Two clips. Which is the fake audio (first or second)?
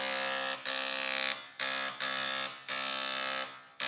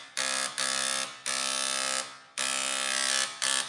second